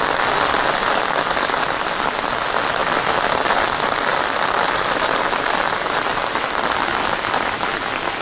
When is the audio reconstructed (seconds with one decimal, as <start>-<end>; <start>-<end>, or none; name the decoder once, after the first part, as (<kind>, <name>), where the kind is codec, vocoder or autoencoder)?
none